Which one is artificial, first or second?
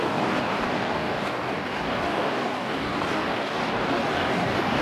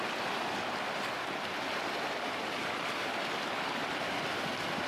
first